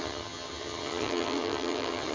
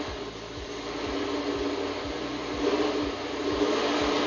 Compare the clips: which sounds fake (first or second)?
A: first